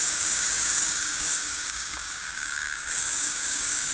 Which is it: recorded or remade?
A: remade